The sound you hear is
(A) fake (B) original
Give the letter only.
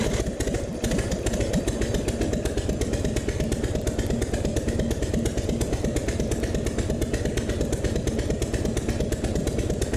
B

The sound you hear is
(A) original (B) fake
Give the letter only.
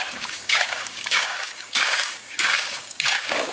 B